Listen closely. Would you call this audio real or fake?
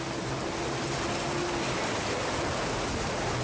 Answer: real